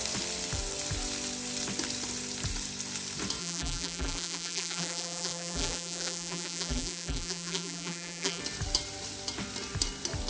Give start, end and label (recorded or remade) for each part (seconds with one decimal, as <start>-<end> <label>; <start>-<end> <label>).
0.0-3.4 recorded; 3.4-8.4 remade; 8.4-10.3 recorded